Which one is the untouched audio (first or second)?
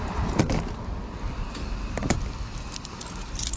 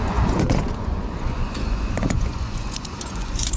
first